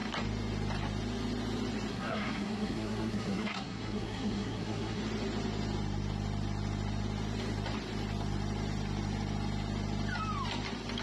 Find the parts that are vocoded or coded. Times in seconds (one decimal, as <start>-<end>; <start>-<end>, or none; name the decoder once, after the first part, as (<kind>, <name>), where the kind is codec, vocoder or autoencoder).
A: 1.9-5.0 (codec, SNAC)